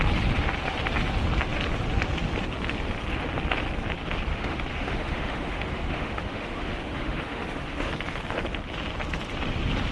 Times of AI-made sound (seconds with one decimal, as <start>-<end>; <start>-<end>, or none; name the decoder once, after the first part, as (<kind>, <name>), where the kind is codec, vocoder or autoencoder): 4.3-7.9 (autoencoder, DAC-VAE)